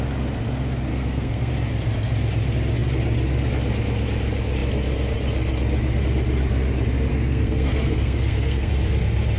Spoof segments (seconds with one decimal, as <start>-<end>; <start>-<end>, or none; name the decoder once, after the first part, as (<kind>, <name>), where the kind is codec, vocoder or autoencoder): 0.9-1.5 (codec, SNAC); 7.1-8.7